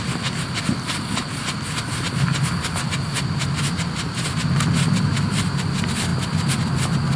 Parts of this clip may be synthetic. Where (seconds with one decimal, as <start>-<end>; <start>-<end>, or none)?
none